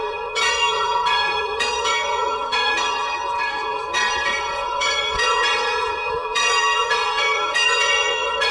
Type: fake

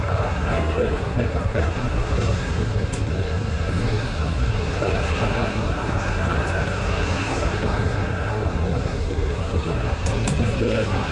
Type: fake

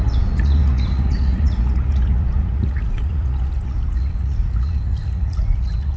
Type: fake